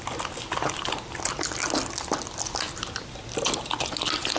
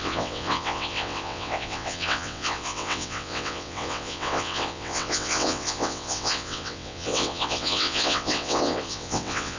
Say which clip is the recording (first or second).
first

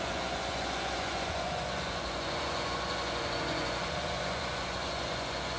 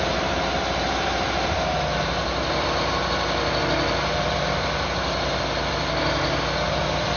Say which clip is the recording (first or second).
second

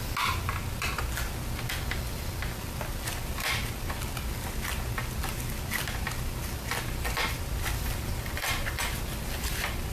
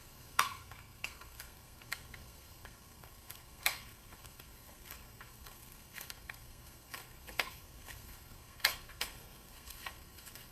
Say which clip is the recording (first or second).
first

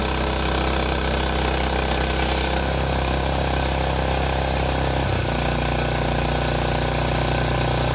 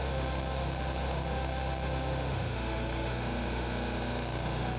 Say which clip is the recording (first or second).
first